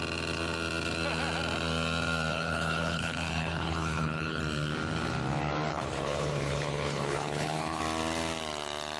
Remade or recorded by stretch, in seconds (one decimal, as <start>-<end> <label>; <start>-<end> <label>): 0.0-2.3 recorded; 2.3-4.4 remade; 4.4-5.7 recorded; 5.7-7.8 remade; 7.8-9.0 recorded